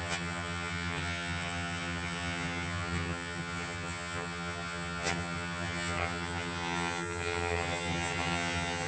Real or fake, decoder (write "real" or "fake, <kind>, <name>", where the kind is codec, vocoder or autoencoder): fake, vocoder, HiFi-GAN